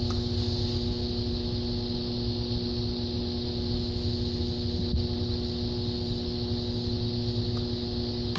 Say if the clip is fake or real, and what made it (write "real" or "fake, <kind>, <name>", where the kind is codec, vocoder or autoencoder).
real